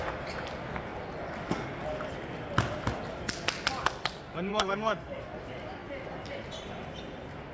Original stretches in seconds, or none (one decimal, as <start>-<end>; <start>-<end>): 0.0-4.5; 5.2-7.5